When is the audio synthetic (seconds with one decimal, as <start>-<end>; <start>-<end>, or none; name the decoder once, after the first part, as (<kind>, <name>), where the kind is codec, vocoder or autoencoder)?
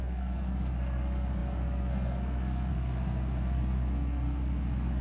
0.0-5.0 (codec, SNAC)